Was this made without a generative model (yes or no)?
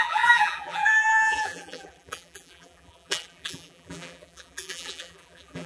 no